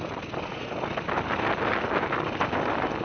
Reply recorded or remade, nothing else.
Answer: recorded